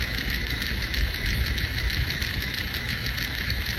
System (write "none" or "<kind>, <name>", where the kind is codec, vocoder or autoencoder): autoencoder, DAC-VAE